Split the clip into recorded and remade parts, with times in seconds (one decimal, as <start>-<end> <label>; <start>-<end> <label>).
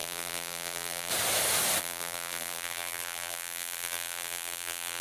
0.0-1.1 remade; 1.1-1.8 recorded; 1.8-5.0 remade